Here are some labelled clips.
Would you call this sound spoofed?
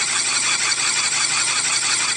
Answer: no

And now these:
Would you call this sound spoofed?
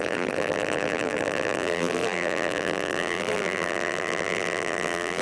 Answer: yes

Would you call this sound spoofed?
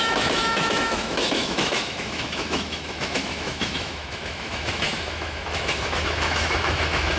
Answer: yes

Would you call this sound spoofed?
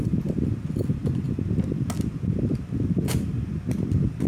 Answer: no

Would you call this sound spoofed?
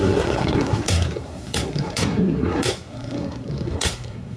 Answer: yes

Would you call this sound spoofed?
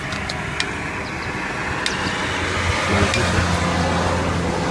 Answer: no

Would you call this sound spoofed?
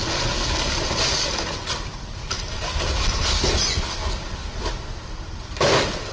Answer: no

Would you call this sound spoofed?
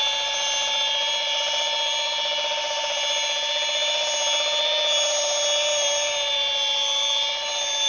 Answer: no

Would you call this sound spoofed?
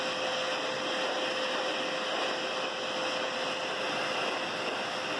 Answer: no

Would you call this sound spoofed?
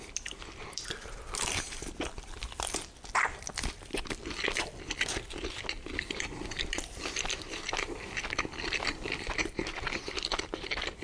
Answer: no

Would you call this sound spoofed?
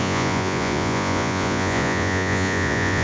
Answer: yes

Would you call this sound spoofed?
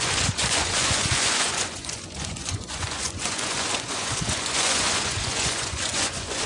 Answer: yes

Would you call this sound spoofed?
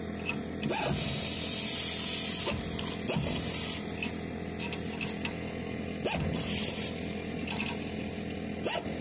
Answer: no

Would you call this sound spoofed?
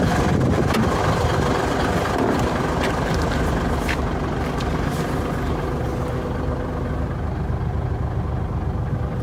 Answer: no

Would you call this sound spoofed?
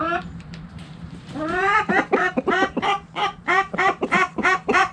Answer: yes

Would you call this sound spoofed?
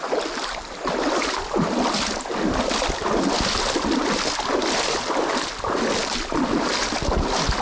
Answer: no